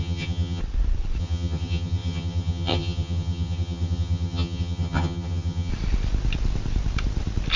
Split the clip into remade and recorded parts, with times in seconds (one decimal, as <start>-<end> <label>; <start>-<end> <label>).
0.0-0.6 remade; 0.6-1.2 recorded; 1.2-5.7 remade; 5.7-7.6 recorded